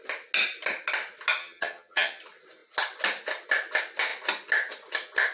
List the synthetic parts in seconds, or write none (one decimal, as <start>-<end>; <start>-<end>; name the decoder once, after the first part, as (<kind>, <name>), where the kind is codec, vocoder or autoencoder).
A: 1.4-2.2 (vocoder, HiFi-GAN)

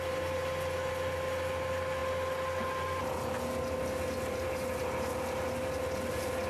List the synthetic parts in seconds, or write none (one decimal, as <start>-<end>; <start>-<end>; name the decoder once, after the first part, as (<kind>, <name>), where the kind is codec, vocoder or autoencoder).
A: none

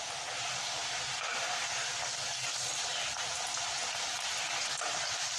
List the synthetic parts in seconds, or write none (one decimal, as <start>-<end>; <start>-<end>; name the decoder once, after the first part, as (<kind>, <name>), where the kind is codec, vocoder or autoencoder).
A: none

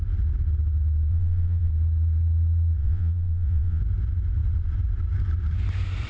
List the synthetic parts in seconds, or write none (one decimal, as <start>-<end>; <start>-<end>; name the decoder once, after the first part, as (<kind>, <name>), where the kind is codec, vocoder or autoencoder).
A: 1.1-1.7 (vocoder, Vocos); 2.8-3.8

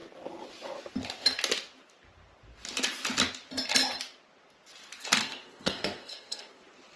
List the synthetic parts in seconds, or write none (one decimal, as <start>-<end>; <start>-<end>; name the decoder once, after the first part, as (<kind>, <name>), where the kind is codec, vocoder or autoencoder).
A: 5.0-6.6 (codec, SNAC)

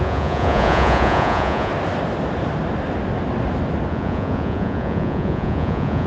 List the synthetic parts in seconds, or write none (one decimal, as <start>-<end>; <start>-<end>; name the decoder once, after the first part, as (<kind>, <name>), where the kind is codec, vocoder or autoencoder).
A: 0.0-1.7 (vocoder, Vocos); 3.9-6.1